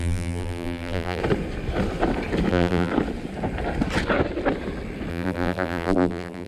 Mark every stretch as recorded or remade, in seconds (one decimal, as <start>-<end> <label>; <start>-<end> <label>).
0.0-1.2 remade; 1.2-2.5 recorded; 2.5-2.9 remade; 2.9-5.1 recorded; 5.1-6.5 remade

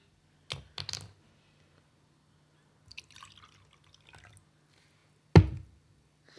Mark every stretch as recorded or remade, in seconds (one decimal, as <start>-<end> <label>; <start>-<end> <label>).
0.0-6.4 recorded

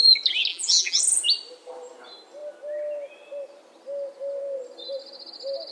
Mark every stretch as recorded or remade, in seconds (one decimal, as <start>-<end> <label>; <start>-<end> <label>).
0.0-0.5 recorded; 0.5-1.0 remade; 1.0-5.7 recorded

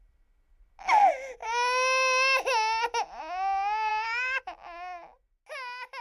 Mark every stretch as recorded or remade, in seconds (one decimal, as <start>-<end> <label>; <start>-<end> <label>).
0.0-6.0 recorded

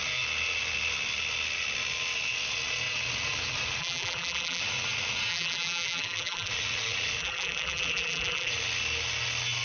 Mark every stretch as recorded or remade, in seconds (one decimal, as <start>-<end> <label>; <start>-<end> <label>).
0.0-3.8 recorded; 3.8-4.6 remade; 4.6-5.3 recorded; 5.3-6.5 remade; 6.5-7.2 recorded; 7.2-8.5 remade; 8.5-9.6 recorded

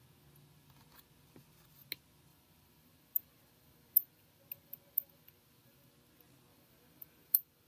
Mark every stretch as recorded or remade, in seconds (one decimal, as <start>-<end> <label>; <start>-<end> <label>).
0.0-2.3 recorded; 2.3-5.9 remade; 5.9-6.5 recorded; 6.5-7.7 remade

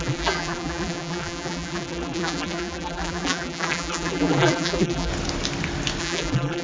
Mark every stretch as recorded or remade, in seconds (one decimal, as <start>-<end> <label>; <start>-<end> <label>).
0.0-5.1 remade; 5.1-6.0 recorded; 6.0-6.6 remade